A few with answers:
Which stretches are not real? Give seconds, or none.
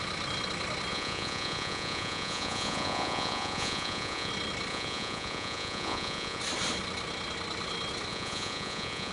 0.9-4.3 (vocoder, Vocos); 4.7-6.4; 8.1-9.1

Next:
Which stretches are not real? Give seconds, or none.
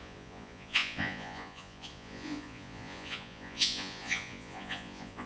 0.0-5.3 (vocoder, Vocos)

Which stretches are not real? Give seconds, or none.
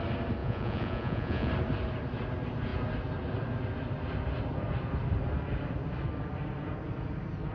0.4-1.5 (vocoder, Vocos)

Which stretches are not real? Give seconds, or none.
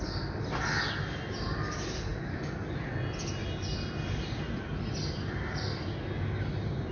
none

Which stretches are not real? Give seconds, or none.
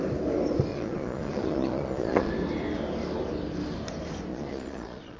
0.7-2.3 (vocoder, Vocos); 4.3-5.2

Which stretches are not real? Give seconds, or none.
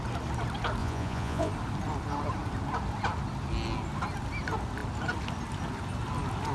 0.8-1.5 (vocoder, Vocos)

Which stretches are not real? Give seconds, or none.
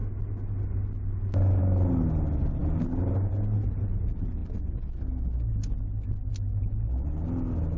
none